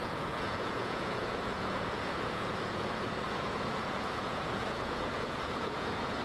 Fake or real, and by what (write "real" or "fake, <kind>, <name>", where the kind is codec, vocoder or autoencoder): fake, vocoder, Vocos